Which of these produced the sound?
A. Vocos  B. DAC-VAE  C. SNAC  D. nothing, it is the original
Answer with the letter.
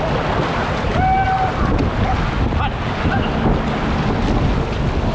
D